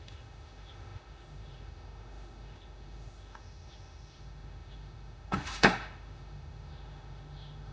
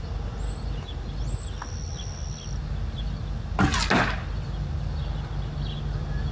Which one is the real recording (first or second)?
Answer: second